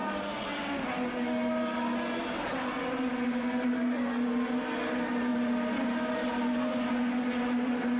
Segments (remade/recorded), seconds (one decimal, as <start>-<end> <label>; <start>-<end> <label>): 0.0-8.0 recorded